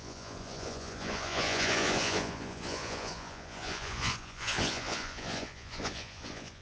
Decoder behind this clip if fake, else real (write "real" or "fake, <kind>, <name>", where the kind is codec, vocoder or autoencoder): fake, vocoder, Vocos